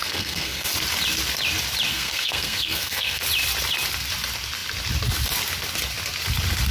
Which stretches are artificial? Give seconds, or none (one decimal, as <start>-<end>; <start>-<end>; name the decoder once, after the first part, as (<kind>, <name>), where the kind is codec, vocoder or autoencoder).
0.0-0.7 (codec, SNAC); 1.9-3.2